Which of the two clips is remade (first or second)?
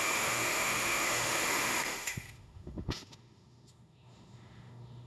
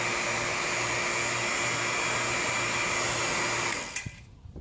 first